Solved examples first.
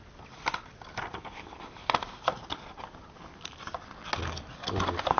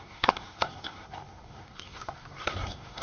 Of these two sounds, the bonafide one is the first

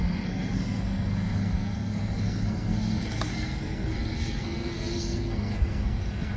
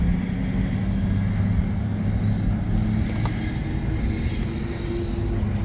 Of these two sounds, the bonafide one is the second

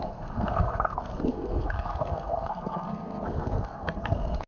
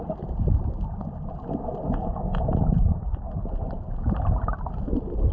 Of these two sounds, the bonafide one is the second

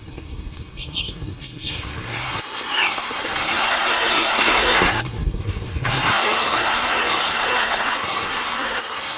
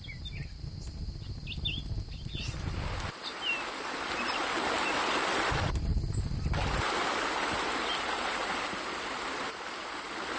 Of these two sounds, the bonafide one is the second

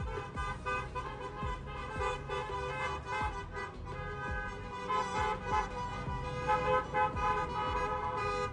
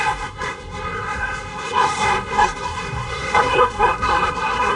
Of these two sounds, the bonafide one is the first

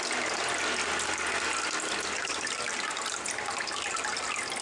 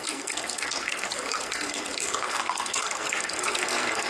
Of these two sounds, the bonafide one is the first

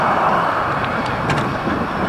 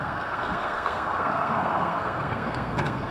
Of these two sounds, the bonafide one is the first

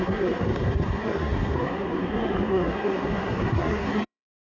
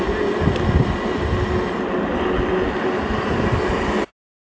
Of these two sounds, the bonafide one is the second